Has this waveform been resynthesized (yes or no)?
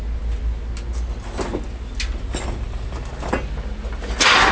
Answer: no